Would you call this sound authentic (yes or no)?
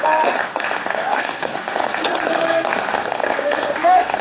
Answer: no